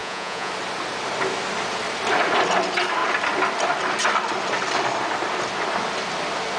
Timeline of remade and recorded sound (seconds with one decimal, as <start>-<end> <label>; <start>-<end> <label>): 0.0-0.5 remade; 0.5-6.6 recorded